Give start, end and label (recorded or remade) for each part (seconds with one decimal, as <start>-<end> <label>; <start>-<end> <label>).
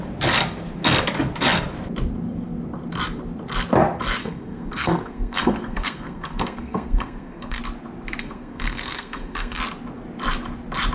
0.0-4.2 recorded; 4.2-7.6 remade; 7.6-8.2 recorded; 8.2-9.6 remade; 9.6-10.9 recorded